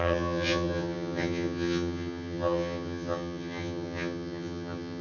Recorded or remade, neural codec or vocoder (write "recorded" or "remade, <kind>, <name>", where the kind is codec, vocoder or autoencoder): remade, vocoder, HiFi-GAN